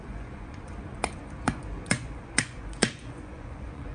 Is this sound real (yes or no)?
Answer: no